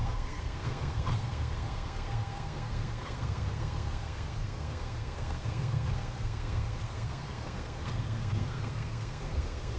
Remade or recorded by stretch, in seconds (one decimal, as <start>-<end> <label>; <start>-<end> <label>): 0.0-9.8 remade